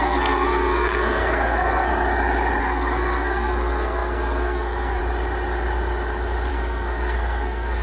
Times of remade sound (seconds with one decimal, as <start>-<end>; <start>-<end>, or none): 0.0-1.9; 2.6-5.0; 6.5-7.8

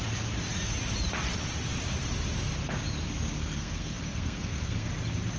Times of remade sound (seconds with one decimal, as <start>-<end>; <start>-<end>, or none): 3.4-4.9

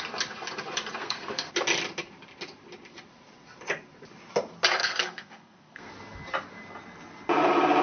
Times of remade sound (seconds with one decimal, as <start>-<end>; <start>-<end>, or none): 1.0-1.5; 4.8-5.9

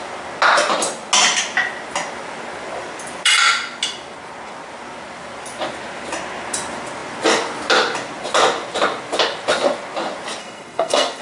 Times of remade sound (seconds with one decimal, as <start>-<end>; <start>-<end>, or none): 10.4-11.2

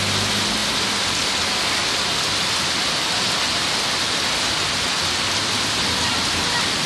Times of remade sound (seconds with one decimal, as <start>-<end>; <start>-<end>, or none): none

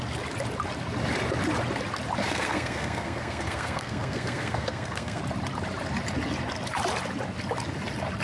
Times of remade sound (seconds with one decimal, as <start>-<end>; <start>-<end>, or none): 2.2-5.2

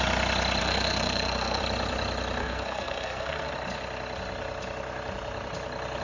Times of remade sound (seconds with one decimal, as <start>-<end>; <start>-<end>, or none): 0.6-1.6; 2.4-3.5

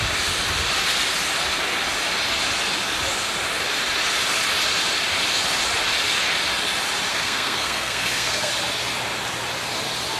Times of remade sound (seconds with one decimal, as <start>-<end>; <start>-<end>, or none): 7.1-8.5